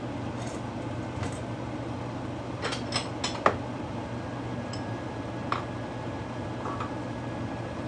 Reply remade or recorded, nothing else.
recorded